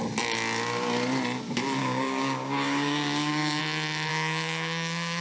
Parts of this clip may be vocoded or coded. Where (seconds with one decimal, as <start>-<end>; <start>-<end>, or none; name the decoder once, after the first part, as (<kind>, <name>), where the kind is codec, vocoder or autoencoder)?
1.8-3.6 (codec, DAC); 4.1-5.2